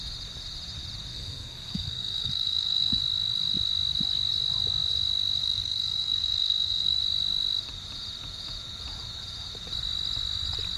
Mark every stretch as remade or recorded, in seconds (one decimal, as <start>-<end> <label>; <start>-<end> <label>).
0.0-1.1 recorded; 1.1-3.0 remade; 3.0-5.4 recorded; 5.4-7.0 remade; 7.0-10.8 recorded